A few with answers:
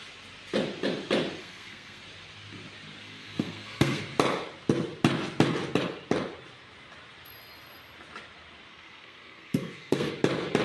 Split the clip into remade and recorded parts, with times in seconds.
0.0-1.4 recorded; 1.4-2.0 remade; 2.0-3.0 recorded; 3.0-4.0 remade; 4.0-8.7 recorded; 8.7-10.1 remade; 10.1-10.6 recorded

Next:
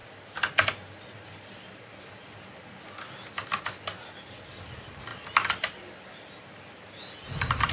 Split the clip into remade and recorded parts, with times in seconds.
0.0-7.7 recorded

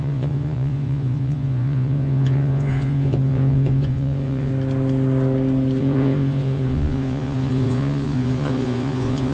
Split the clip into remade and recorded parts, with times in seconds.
0.0-4.5 remade; 4.5-5.8 recorded; 5.8-9.3 remade

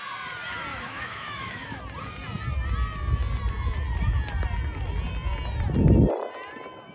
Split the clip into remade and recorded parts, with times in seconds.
0.0-0.7 recorded; 0.7-1.8 remade; 1.8-6.9 recorded

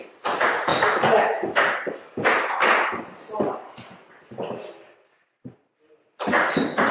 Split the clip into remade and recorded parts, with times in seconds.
0.0-6.9 recorded